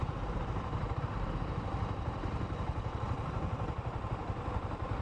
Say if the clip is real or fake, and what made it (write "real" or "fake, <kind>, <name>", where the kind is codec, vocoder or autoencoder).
fake, vocoder, BigVGAN v2